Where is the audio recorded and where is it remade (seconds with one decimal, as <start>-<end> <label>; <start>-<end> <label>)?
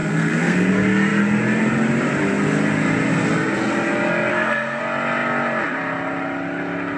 0.0-0.7 remade; 0.7-4.3 recorded; 4.3-4.8 remade; 4.8-7.0 recorded